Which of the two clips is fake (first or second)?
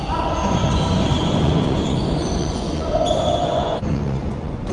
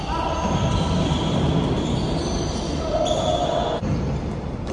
first